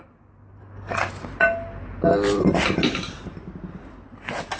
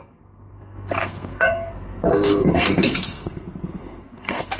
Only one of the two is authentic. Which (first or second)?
first